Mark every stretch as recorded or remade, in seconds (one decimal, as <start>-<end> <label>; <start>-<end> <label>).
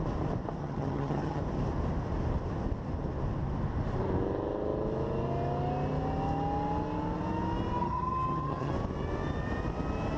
0.0-0.6 recorded; 0.6-1.4 remade; 1.4-7.8 recorded; 7.8-8.7 remade; 8.7-10.2 recorded